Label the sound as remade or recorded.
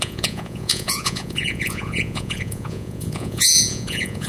remade